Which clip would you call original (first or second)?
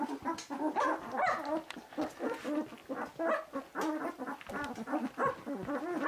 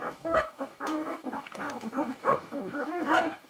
first